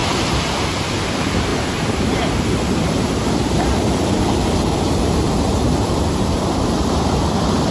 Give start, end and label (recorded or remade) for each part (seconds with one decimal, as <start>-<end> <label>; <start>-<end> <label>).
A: 0.0-0.9 recorded; 0.9-7.7 remade